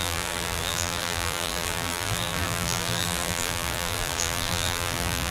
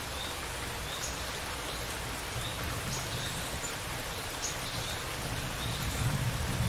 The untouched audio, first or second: second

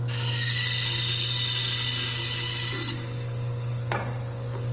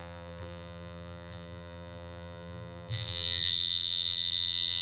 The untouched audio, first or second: first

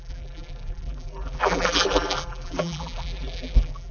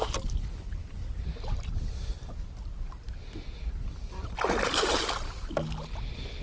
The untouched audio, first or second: second